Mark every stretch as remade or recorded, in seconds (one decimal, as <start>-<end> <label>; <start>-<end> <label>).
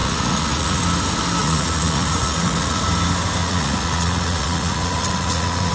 0.0-0.8 remade; 0.8-1.4 recorded; 1.4-2.8 remade; 2.8-3.4 recorded; 3.4-5.7 remade